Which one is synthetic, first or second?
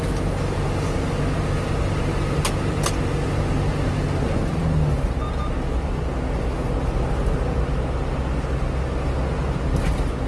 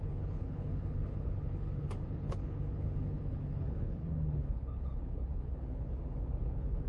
second